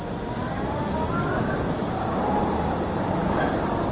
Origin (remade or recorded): recorded